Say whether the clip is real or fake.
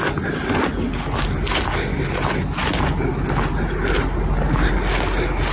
real